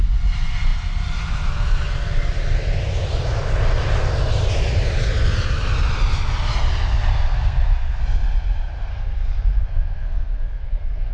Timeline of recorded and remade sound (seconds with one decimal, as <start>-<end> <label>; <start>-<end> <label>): 0.0-7.1 recorded; 7.1-8.0 remade; 8.0-8.9 recorded; 8.9-11.1 remade